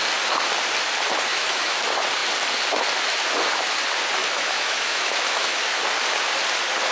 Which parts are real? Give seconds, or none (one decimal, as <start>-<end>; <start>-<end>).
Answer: 0.0-1.3; 1.8-4.2; 5.8-6.9